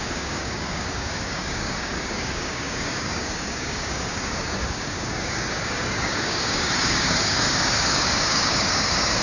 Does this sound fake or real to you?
fake